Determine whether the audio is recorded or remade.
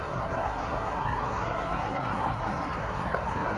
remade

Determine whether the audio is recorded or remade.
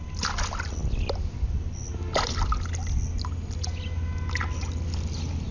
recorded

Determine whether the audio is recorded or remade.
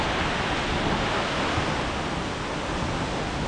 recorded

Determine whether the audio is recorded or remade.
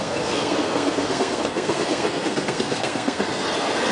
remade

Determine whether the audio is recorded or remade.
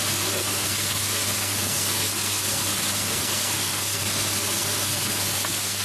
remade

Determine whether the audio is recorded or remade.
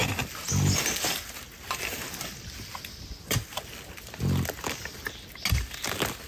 recorded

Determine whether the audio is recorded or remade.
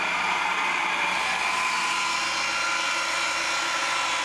recorded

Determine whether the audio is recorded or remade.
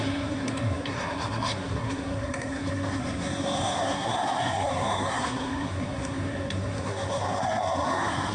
remade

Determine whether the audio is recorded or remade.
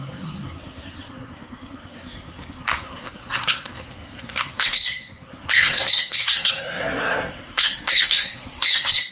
remade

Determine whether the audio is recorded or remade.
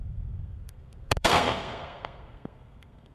remade